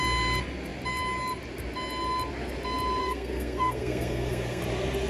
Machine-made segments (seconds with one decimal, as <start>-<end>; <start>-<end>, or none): 3.0-4.6